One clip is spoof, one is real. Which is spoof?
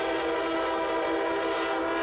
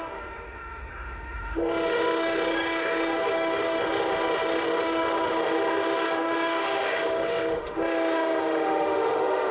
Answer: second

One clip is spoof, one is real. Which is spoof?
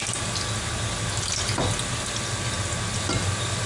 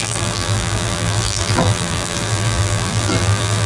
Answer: second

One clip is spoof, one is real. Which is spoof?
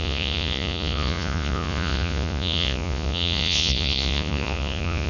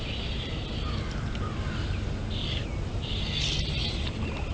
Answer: first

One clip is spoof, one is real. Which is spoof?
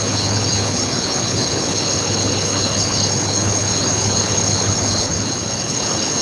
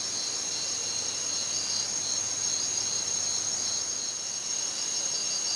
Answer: first